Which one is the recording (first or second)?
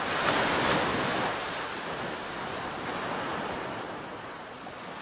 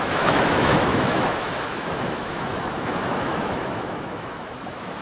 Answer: first